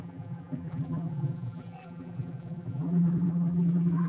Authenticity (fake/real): fake